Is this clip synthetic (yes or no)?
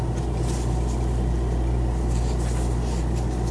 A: no